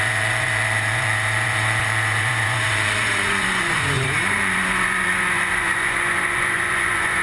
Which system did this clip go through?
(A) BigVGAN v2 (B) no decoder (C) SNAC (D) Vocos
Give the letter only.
D